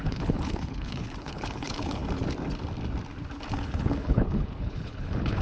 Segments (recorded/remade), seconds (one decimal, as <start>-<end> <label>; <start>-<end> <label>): 0.0-2.0 remade; 2.0-3.5 recorded; 3.5-5.4 remade